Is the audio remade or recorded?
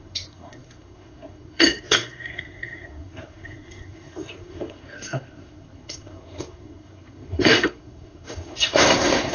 remade